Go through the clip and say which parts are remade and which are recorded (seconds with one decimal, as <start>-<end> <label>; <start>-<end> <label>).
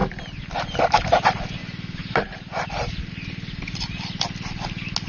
0.0-2.0 recorded; 2.0-3.1 remade; 3.1-5.1 recorded